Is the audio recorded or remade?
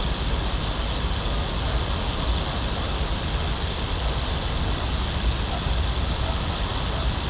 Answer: recorded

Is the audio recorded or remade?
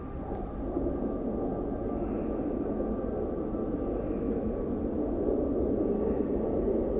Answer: recorded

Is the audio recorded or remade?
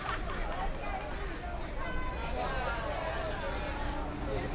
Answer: recorded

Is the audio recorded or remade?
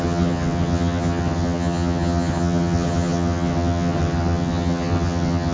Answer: remade